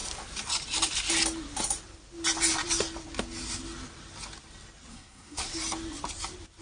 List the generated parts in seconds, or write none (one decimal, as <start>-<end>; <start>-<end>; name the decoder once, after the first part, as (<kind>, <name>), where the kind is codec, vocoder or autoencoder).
4.9-5.4 (codec, SNAC)